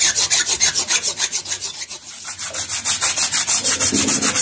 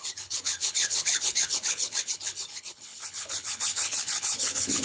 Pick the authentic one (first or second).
first